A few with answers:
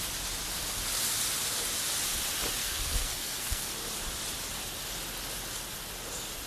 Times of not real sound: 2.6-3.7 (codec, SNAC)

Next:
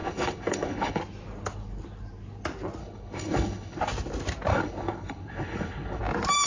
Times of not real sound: 0.0-1.0 (codec, HILCodec); 2.8-3.8; 4.5-6.0

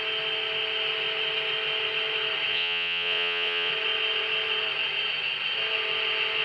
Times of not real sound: 2.5-3.7 (vocoder, Vocos)

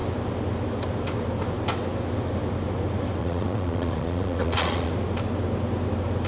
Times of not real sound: 3.2-4.9 (vocoder, Vocos)